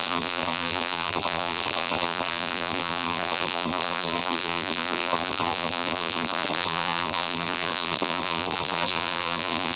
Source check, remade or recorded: remade